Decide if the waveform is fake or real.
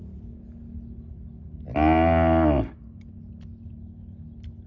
real